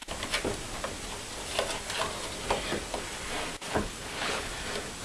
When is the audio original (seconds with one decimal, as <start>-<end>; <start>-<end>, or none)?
0.0-3.7; 4.5-5.0